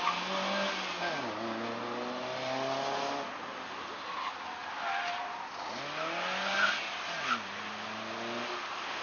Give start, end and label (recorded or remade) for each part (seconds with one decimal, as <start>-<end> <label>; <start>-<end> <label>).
0.0-9.0 recorded